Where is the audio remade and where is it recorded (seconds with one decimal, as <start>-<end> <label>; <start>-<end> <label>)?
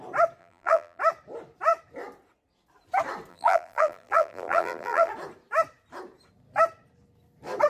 0.0-0.4 recorded; 0.4-1.0 remade; 1.0-3.3 recorded; 3.3-5.1 remade; 5.1-7.7 recorded